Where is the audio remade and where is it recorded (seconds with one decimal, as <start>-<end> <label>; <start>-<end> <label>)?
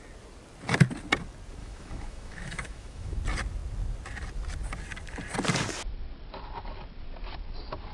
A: 0.0-1.6 recorded; 1.6-3.2 remade; 3.2-7.9 recorded